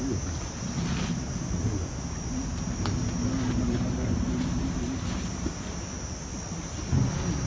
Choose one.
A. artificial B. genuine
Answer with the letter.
B